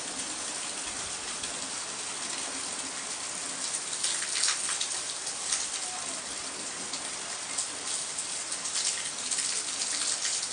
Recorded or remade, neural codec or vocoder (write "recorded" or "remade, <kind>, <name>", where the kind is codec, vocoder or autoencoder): recorded